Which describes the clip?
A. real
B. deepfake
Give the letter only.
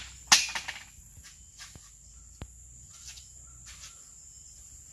A